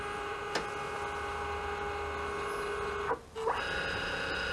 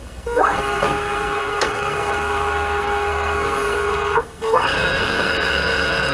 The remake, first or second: second